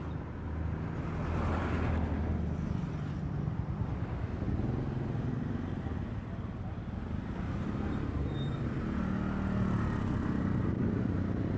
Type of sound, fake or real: real